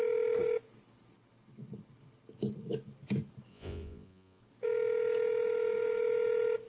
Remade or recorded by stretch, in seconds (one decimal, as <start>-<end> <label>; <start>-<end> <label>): 0.0-3.5 recorded; 3.5-4.4 remade; 4.4-6.7 recorded